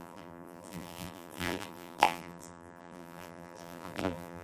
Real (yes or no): no